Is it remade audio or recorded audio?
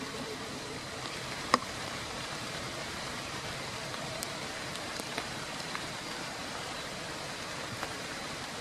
remade